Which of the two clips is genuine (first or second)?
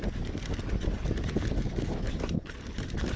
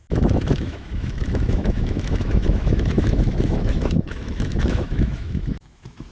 first